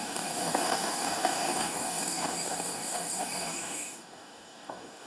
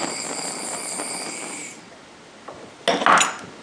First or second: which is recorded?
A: second